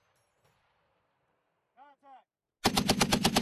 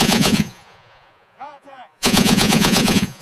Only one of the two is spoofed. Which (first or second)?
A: second